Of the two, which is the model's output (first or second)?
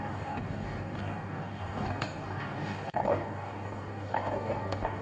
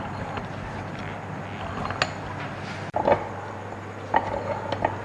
first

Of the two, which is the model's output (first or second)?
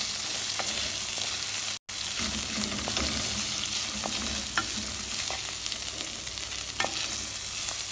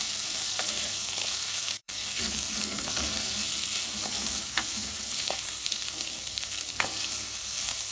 second